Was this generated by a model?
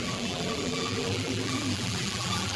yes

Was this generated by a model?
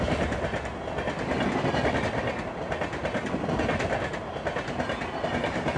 no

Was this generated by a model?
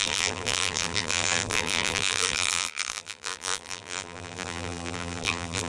yes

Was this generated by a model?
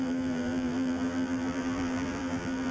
yes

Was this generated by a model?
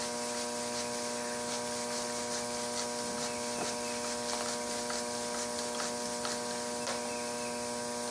no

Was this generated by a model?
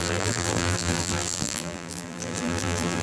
yes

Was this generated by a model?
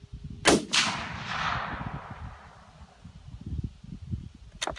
no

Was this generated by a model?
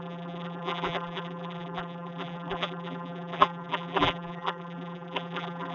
yes